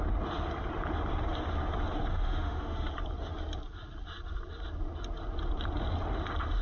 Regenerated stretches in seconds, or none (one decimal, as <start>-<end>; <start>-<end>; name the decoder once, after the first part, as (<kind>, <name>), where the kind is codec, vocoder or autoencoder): 2.1-2.9 (autoencoder, DAC-VAE)